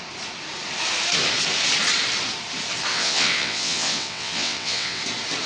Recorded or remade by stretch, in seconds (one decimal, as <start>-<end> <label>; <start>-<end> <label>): 0.0-2.9 recorded; 2.9-5.0 remade; 5.0-5.5 recorded